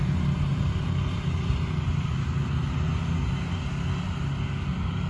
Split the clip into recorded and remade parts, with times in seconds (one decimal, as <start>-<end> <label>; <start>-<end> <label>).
0.0-5.1 recorded